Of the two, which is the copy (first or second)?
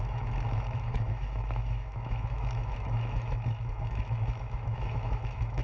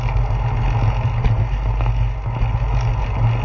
first